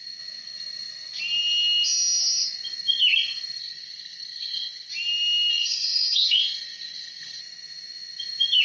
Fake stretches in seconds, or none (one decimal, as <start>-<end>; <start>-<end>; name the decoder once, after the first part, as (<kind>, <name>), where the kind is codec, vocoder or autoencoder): 3.6-4.9 (codec, SNAC); 5.5-7.4